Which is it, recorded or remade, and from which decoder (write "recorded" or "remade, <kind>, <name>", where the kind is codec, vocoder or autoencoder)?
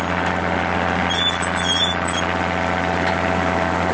recorded